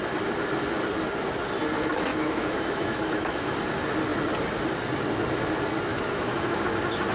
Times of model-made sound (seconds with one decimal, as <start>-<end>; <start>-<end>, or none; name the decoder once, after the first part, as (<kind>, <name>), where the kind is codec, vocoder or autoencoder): 2.1-3.5 (autoencoder, DAC-VAE); 5.9-6.6